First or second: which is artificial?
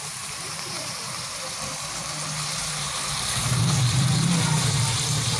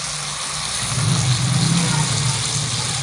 first